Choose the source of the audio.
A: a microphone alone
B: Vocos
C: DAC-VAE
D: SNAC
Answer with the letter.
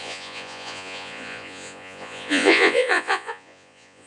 B